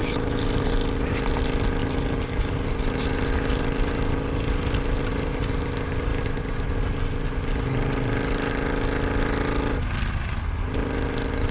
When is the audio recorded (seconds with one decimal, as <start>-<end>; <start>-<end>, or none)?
1.4-1.8; 5.5-11.5